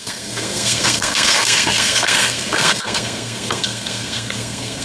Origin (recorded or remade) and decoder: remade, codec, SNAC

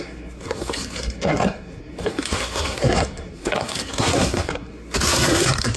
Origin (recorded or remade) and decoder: remade, codec, SNAC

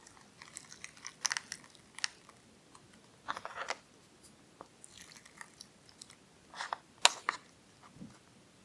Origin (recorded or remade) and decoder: recorded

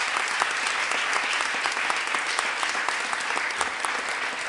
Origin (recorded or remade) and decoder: recorded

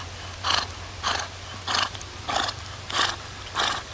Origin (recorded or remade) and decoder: recorded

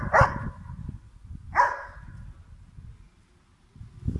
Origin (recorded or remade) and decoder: recorded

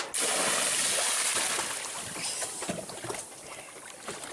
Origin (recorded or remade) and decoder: recorded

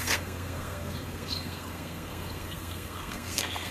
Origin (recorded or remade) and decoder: remade, codec, SNAC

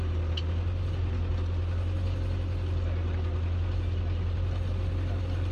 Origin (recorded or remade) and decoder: recorded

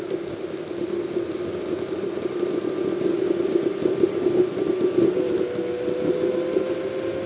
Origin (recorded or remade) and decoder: recorded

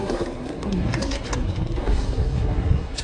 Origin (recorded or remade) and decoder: remade, codec, SNAC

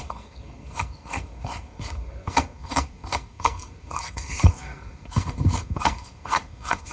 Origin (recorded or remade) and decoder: remade, codec, SNAC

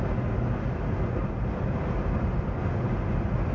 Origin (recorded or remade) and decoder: recorded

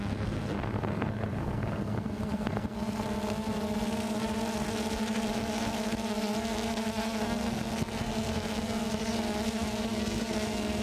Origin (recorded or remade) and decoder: remade, codec, SNAC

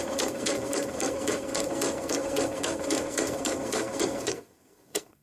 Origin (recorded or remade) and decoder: remade, codec, SNAC